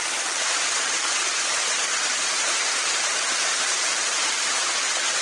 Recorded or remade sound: remade